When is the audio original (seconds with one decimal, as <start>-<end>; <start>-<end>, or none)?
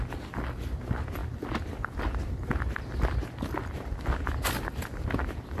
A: 0.0-5.6